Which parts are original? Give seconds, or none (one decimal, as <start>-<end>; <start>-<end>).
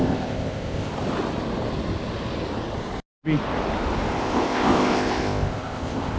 0.9-4.1